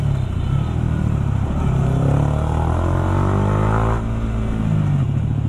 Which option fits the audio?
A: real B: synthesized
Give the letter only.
A